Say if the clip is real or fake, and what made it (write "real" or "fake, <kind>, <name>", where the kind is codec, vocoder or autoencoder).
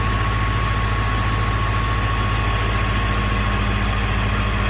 real